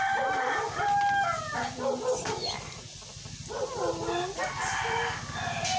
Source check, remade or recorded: recorded